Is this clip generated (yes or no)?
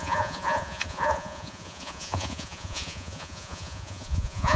yes